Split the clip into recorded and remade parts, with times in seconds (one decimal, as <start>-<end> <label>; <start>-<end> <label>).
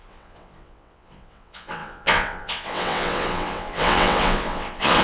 0.0-5.0 remade